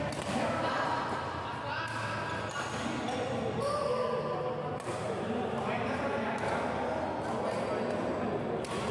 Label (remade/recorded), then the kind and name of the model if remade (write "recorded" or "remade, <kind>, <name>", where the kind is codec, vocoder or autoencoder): recorded